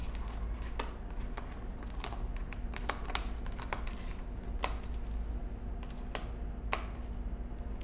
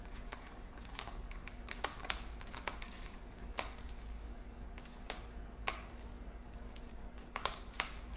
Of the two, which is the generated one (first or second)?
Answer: second